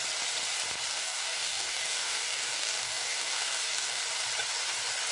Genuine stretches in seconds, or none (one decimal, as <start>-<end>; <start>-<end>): 0.0-0.9; 4.0-5.1

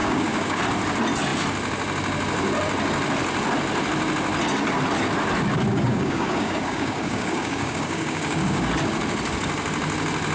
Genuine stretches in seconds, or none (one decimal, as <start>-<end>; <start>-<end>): 0.6-5.7; 8.7-10.3